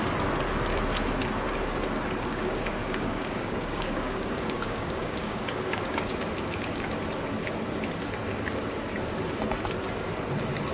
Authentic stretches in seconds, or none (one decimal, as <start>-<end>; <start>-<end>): 0.0-2.3; 7.0-10.7

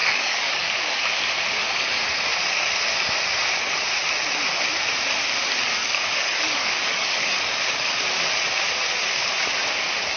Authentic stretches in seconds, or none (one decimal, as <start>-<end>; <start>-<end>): 1.0-5.8; 8.0-10.2

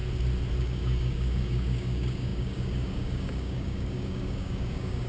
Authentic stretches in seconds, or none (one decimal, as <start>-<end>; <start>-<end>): 0.0-0.6

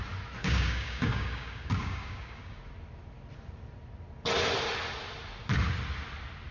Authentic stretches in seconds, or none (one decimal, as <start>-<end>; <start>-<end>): 0.0-0.4; 2.6-6.5

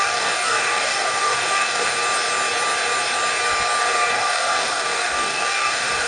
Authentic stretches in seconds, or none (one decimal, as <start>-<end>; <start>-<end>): 2.0-3.8

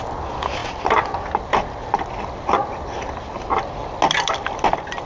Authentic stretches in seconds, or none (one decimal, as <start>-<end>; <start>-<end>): 0.0-5.1

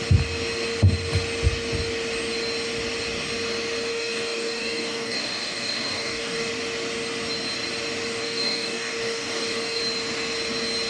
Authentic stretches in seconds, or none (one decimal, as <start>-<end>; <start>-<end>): 0.0-3.9; 6.5-8.2; 9.8-10.9

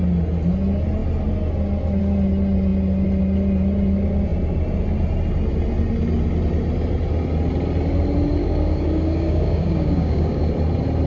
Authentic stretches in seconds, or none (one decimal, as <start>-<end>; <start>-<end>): 0.0-8.4; 10.4-11.1